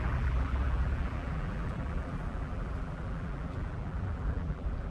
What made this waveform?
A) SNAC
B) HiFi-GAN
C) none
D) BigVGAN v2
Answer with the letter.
D